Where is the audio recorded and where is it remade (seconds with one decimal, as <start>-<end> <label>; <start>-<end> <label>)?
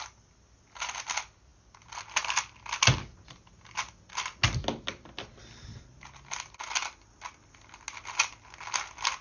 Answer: 0.0-9.2 recorded